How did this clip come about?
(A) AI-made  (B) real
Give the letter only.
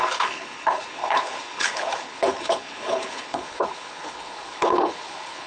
A